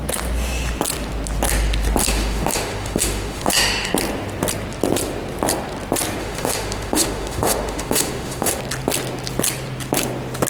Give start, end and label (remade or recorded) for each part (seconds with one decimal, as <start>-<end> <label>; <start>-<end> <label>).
0.0-2.0 recorded; 2.0-3.9 remade; 3.9-6.2 recorded; 6.2-8.6 remade; 8.6-10.5 recorded